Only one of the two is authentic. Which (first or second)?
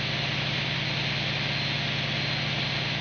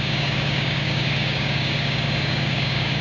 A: first